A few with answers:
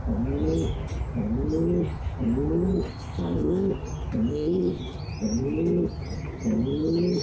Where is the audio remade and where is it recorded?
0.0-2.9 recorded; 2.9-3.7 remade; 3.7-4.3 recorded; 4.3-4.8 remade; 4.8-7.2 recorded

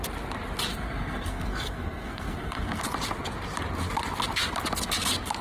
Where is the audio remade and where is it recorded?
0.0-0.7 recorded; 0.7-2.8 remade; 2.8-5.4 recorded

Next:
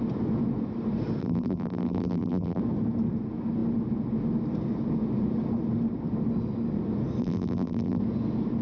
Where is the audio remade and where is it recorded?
0.0-1.2 recorded; 1.2-2.6 remade; 2.6-7.2 recorded; 7.2-8.0 remade; 8.0-8.6 recorded